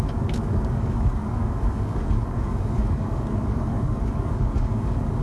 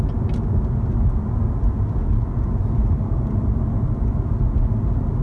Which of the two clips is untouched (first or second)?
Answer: second